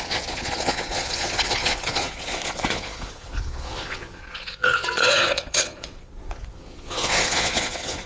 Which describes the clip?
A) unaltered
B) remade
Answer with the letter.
B